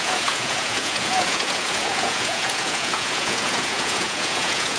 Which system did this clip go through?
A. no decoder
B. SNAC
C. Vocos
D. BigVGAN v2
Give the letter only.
C